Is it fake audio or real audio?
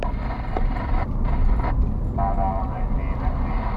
real